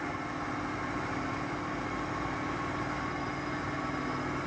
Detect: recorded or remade recorded